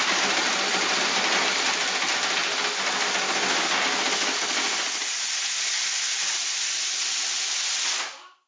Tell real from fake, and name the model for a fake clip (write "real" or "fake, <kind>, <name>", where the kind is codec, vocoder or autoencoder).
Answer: real